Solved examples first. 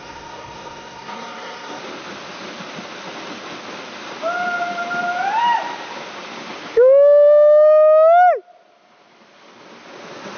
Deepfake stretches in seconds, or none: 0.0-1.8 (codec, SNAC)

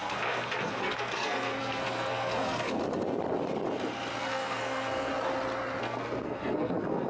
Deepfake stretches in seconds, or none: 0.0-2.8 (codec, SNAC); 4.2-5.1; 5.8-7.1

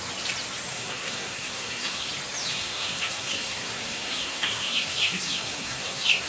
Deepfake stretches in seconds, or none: 0.7-2.1 (codec, SNAC); 2.5-6.3

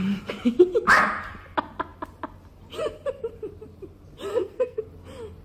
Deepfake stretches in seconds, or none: 4.3-4.8 (codec, SNAC)

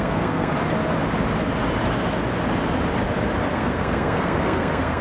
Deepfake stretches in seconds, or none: 0.0-0.5 (codec, SNAC); 3.5-5.0

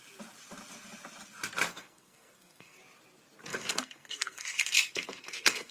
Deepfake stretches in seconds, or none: 1.7-2.8 (codec, SNAC); 3.5-5.7